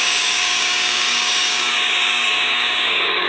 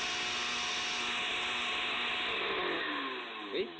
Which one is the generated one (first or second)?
first